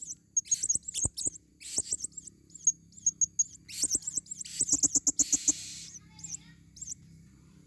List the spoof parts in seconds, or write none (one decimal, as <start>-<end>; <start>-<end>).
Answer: none